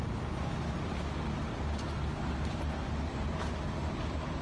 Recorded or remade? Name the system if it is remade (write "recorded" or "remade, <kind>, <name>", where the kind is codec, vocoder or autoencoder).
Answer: recorded